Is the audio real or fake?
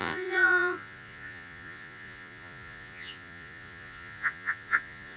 fake